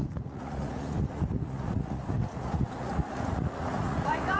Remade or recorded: remade